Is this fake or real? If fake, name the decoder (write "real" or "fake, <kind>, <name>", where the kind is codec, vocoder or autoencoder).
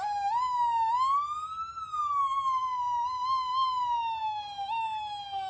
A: real